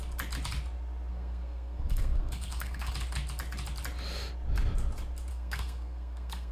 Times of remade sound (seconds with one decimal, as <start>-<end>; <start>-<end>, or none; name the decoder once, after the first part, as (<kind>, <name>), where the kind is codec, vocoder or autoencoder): 1.1-2.9 (codec, SNAC); 5.3-6.5